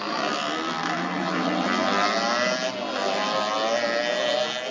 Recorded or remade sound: recorded